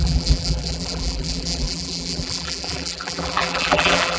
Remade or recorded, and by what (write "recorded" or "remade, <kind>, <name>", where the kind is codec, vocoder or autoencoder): remade, vocoder, BigVGAN v2